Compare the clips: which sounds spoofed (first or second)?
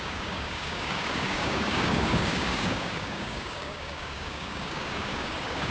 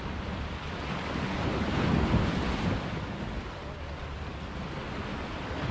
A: first